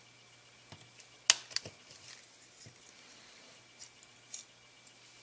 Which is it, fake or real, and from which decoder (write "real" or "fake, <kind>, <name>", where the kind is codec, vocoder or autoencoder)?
real